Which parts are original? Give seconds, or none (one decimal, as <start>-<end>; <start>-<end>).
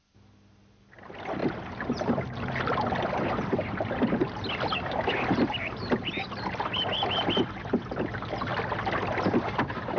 8.5-10.0